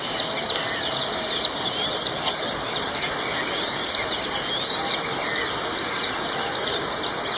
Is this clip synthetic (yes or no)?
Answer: yes